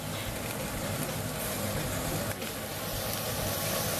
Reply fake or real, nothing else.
real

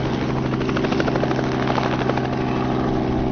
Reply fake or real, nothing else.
real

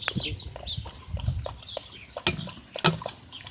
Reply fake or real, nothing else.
real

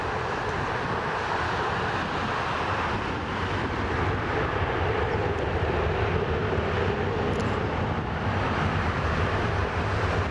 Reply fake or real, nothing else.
fake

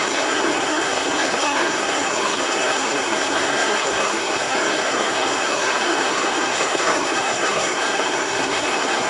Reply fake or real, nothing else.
fake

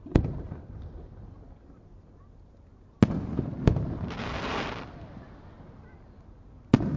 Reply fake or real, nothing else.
real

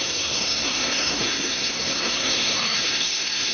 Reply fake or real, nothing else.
fake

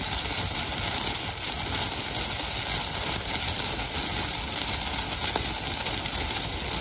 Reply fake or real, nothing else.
real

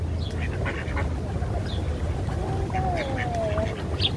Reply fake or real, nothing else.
real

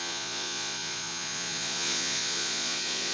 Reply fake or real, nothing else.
fake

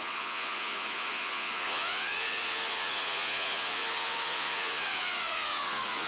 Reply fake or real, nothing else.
fake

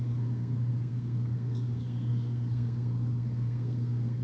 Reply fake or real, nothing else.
fake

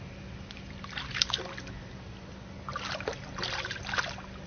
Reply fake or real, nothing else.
real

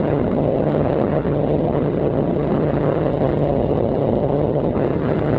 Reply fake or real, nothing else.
fake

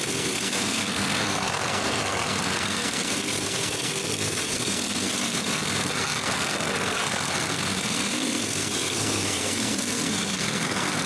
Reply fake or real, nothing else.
fake